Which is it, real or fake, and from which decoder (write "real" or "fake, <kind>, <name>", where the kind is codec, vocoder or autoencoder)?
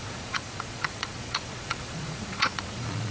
fake, vocoder, Vocos